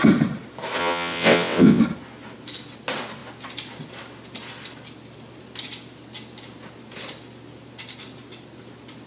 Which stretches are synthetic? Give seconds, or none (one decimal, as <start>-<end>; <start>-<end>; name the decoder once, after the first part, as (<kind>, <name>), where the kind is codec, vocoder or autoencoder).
0.8-1.8 (vocoder, WaveNeXt)